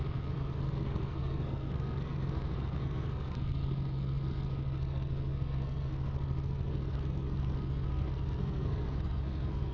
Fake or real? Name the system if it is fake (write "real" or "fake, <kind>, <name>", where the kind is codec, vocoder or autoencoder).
fake, codec, SNAC